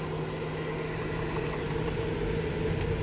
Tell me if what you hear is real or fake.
real